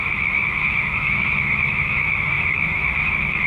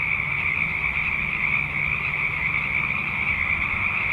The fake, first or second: first